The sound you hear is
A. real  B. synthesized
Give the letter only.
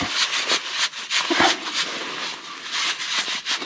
A